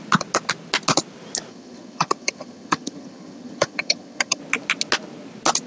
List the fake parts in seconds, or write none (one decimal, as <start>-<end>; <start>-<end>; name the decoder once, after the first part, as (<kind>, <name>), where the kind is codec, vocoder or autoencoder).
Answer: 1.5-4.4 (vocoder, HiFi-GAN)